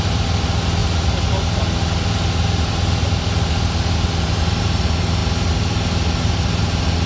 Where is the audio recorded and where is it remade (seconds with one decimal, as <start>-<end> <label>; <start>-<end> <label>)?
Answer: 0.0-7.1 recorded